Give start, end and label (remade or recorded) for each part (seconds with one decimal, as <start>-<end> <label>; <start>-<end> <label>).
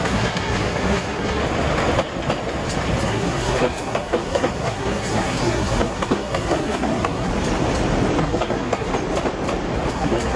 0.0-1.4 remade; 1.4-3.0 recorded; 3.0-7.3 remade; 7.3-8.2 recorded; 8.2-8.9 remade; 8.9-9.9 recorded; 9.9-10.4 remade